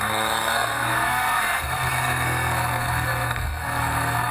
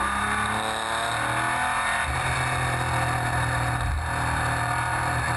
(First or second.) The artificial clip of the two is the first